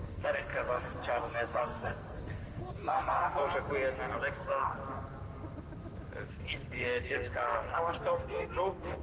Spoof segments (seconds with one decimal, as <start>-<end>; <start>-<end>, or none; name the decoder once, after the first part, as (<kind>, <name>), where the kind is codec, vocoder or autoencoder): 0.0-3.4 (codec, SNAC); 4.3-4.8; 6.2-9.0